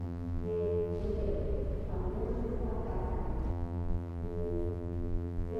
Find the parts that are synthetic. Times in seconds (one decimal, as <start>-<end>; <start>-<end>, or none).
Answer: 0.0-1.0; 3.5-5.6